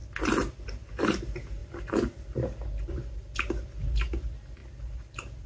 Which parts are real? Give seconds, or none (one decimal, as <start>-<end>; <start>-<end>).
0.0-5.5